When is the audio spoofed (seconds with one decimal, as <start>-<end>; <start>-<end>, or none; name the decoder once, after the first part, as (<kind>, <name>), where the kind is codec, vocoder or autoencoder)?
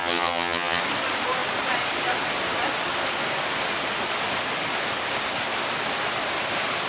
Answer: 0.0-0.8 (vocoder, HiFi-GAN)